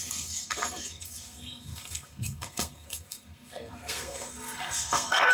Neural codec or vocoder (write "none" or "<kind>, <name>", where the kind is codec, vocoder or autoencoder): codec, SNAC